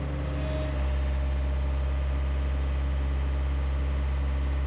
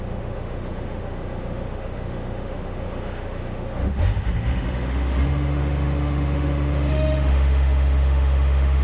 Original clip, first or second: first